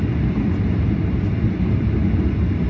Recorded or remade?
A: recorded